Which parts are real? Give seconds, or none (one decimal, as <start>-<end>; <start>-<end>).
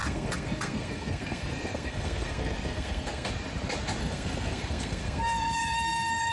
3.3-4.0